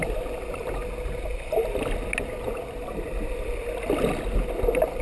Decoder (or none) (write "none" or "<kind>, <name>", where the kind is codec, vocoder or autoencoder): none